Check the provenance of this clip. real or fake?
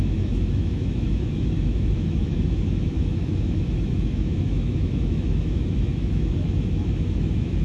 fake